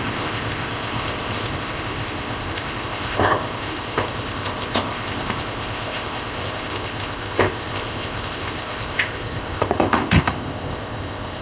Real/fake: fake